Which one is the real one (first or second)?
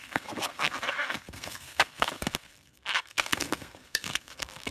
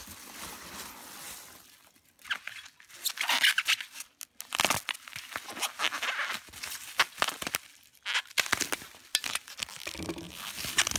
second